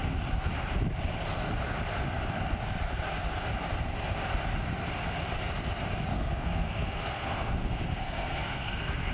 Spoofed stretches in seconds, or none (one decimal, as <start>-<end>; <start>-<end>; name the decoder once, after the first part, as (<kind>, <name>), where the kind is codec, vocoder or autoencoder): 6.1-9.1 (codec, SNAC)